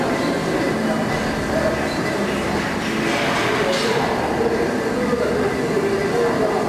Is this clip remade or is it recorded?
recorded